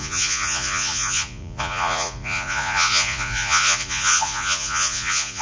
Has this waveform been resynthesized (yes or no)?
yes